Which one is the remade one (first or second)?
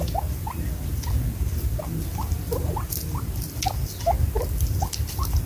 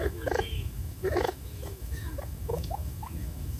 second